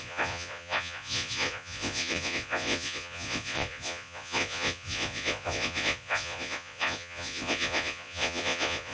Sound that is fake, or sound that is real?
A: fake